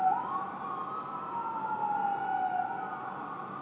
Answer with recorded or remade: recorded